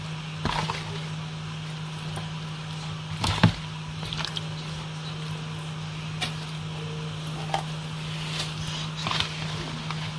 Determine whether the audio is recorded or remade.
recorded